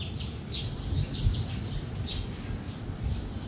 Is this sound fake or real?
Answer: real